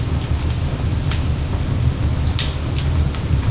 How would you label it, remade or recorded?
recorded